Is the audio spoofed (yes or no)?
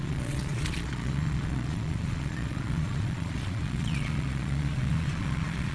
yes